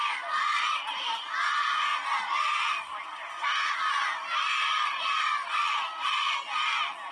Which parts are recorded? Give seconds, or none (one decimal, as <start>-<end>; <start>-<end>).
0.0-4.8; 6.5-7.1